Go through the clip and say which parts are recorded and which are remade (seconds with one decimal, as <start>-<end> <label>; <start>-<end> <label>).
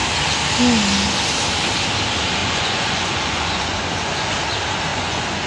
0.0-2.4 recorded; 2.4-4.4 remade; 4.4-4.9 recorded; 4.9-5.5 remade